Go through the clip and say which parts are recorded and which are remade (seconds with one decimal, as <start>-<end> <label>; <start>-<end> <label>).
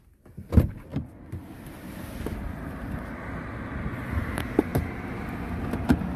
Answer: 0.0-6.2 recorded